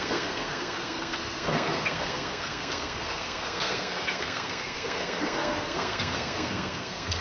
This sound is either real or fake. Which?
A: fake